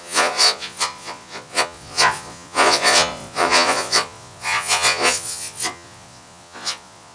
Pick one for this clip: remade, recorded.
remade